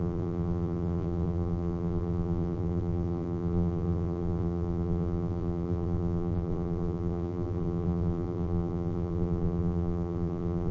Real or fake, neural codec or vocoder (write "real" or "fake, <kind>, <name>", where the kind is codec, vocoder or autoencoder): fake, vocoder, BigVGAN v2